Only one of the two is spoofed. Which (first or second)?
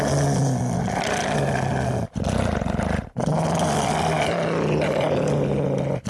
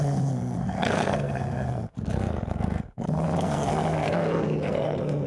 second